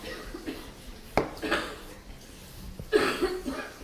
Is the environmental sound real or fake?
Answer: real